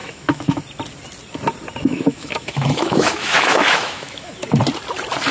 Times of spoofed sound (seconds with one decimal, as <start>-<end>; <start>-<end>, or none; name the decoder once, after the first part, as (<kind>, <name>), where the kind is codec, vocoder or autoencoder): 0.0-0.6 (autoencoder, DAC-VAE); 1.8-4.3